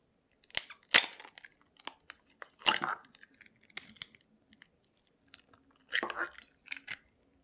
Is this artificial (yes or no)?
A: no